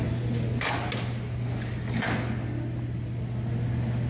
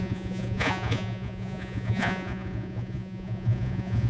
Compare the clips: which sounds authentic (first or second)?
first